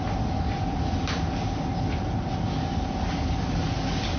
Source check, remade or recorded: recorded